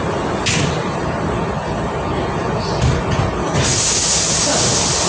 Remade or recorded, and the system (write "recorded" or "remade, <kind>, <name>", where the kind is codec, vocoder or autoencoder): recorded